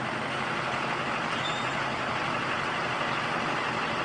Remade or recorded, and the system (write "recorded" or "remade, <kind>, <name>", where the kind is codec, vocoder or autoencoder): recorded